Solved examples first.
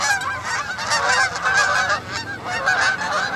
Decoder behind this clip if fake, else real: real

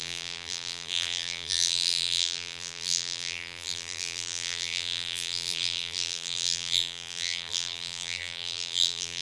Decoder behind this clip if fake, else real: fake, vocoder, BigVGAN v2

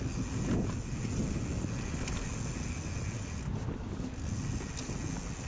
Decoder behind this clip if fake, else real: real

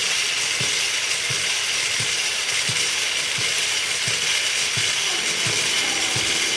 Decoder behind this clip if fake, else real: fake, vocoder, BigVGAN v2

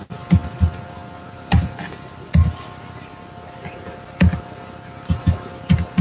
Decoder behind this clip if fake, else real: real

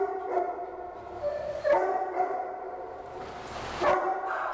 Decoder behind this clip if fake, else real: fake, vocoder, BigVGAN v2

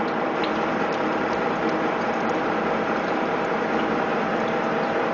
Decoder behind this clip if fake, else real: fake, vocoder, BigVGAN v2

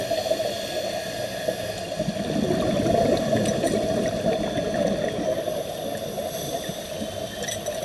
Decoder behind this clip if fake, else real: real